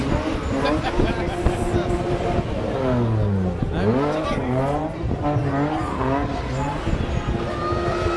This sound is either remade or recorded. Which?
recorded